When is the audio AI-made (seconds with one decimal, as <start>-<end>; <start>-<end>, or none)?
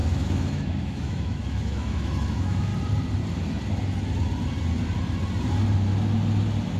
0.0-2.7